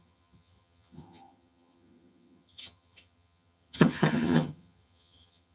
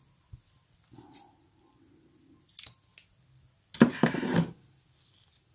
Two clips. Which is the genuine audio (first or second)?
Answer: second